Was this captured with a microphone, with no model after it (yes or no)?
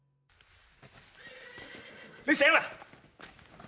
yes